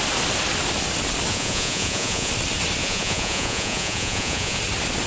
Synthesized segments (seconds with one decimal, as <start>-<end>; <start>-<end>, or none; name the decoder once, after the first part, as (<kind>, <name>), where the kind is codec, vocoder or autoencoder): 1.3-2.3 (vocoder, Vocos); 2.8-4.6